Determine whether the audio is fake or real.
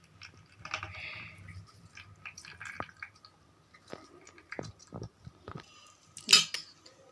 real